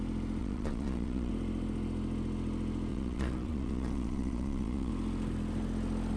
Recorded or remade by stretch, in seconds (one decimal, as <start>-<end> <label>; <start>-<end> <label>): 0.0-0.4 recorded; 0.4-1.3 remade; 1.3-2.9 recorded; 2.9-4.9 remade; 4.9-6.2 recorded